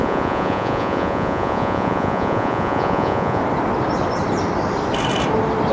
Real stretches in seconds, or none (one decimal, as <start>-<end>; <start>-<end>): 3.4-5.7